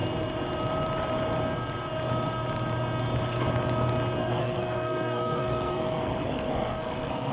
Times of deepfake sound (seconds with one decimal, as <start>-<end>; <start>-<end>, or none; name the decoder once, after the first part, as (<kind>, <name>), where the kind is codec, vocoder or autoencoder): 4.2-7.3 (codec, SNAC)